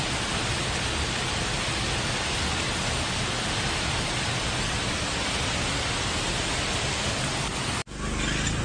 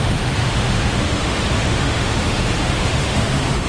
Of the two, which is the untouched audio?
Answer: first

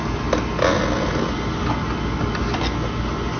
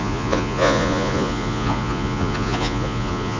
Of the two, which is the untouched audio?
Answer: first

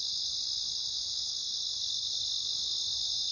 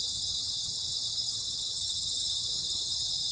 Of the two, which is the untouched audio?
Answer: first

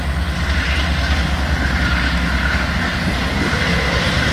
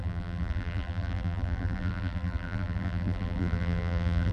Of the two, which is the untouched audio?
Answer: first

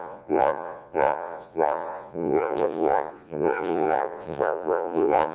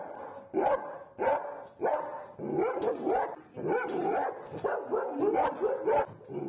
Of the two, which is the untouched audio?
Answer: second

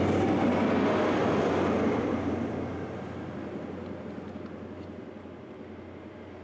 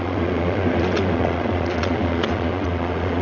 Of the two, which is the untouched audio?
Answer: first